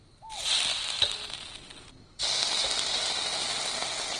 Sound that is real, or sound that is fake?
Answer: real